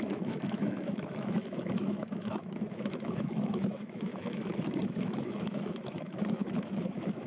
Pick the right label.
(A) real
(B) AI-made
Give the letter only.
B